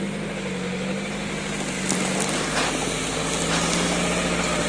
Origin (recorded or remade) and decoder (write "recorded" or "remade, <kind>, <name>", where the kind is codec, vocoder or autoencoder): recorded